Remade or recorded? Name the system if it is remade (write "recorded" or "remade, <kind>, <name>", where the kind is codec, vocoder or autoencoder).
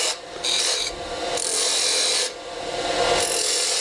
recorded